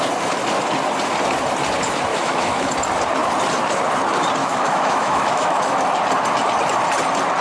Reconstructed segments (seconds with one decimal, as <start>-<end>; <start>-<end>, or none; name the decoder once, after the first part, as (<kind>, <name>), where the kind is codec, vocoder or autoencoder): 2.1-2.7 (autoencoder, DAC-VAE); 4.4-5.8